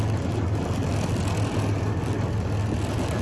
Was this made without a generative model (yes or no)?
yes